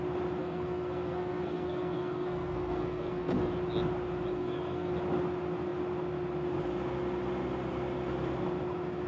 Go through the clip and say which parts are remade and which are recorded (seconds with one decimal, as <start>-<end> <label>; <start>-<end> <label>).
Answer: 0.0-0.4 recorded; 0.4-3.5 remade; 3.5-4.3 recorded; 4.3-4.9 remade; 4.9-9.1 recorded